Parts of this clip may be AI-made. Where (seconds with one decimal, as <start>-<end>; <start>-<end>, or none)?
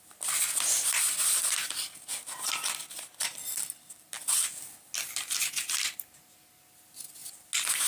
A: 2.1-4.3